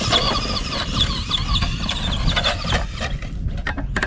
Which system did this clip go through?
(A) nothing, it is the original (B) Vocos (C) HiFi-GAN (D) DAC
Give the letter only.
A